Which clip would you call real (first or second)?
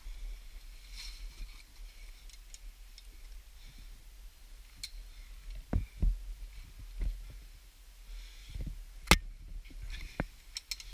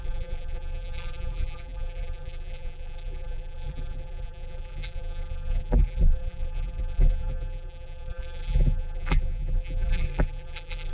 first